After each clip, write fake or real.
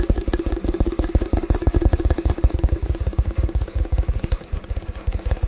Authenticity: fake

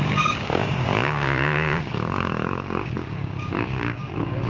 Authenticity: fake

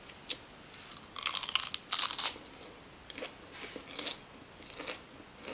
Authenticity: real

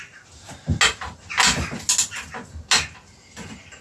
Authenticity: real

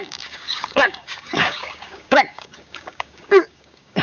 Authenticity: fake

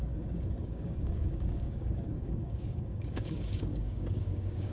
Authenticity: fake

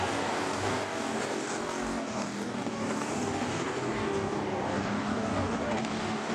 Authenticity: fake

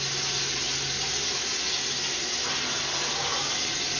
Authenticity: real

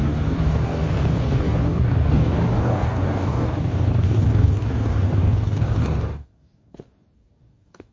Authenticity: fake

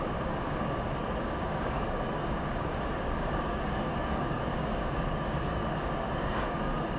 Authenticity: fake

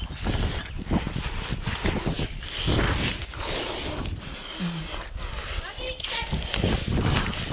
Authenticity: real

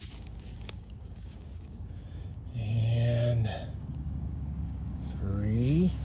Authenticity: fake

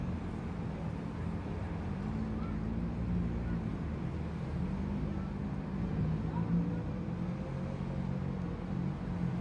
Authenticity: real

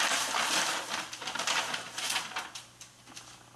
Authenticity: real